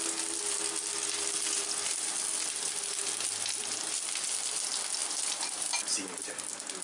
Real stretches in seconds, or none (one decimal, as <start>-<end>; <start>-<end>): 0.0-5.0; 6.3-6.8